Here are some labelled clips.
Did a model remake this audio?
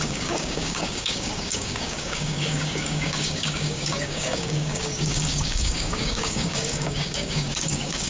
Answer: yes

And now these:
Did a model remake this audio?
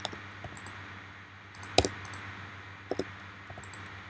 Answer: no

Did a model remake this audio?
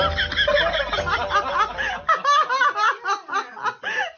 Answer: no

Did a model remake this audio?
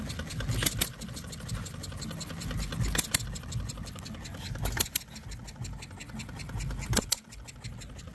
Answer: no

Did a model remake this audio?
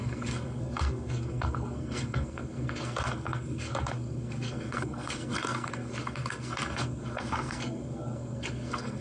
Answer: yes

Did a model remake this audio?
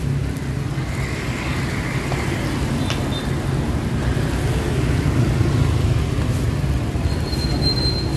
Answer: no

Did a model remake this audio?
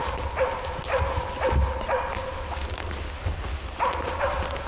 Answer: no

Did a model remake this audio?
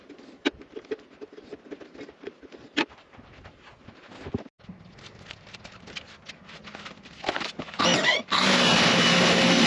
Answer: no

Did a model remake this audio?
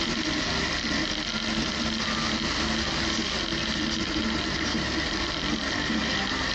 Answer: no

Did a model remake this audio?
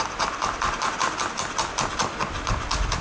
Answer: no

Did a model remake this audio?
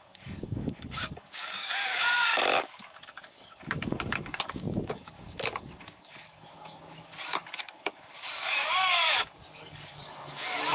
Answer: yes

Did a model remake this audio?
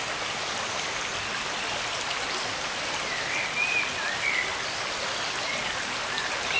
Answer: no